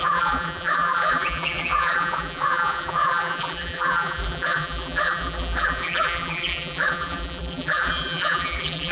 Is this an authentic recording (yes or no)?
no